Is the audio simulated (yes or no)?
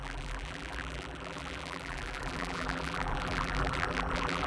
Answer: yes